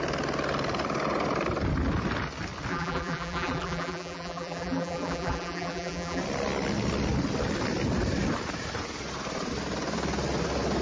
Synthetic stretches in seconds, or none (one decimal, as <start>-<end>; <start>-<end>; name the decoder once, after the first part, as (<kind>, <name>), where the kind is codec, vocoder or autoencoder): 2.7-6.2 (vocoder, BigVGAN v2)